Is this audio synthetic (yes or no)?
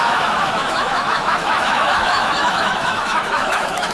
yes